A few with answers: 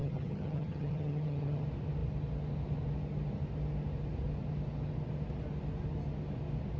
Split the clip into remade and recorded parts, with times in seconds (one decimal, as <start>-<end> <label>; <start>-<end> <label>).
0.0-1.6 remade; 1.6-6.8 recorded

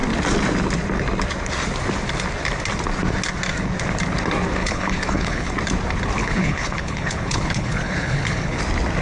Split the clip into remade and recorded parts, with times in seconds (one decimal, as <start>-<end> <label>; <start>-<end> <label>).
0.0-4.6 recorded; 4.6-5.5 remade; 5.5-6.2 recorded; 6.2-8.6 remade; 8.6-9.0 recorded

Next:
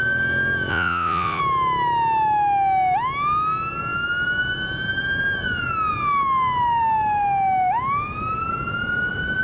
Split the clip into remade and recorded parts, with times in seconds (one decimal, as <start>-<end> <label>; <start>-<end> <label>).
0.0-0.7 recorded; 0.7-1.4 remade; 1.4-9.4 recorded